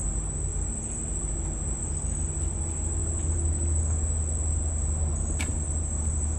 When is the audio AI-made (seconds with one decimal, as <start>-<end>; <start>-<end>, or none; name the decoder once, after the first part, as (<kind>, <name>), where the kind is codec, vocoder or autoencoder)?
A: none